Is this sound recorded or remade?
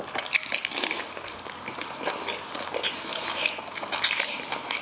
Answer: recorded